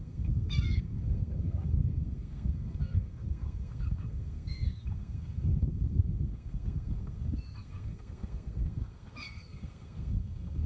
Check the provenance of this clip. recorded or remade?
remade